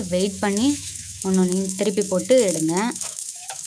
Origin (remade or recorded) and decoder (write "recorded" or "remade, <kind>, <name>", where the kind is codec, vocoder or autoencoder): remade, autoencoder, DAC-VAE